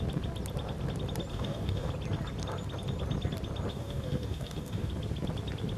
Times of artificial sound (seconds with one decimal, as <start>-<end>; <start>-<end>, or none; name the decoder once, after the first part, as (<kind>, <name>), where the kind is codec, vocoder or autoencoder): 1.3-1.9 (codec, DAC); 3.7-4.9